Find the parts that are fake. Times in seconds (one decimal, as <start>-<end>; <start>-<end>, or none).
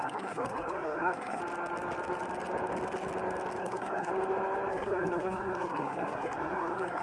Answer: 0.0-1.4; 3.6-4.1; 4.7-7.0